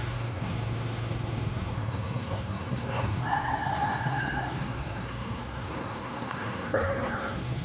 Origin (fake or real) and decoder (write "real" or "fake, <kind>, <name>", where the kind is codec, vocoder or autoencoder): fake, codec, SNAC